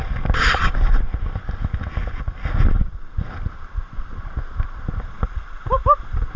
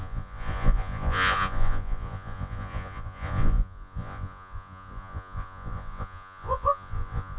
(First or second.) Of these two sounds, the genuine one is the first